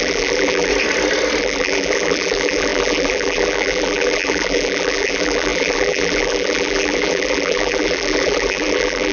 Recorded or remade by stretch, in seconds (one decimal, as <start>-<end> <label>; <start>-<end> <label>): 0.0-0.7 remade; 0.7-1.4 recorded; 1.4-9.1 remade